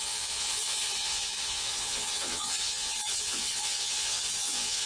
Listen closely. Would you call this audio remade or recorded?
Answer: remade